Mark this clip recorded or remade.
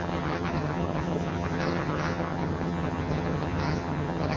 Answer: remade